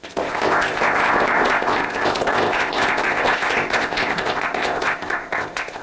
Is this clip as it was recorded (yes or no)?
no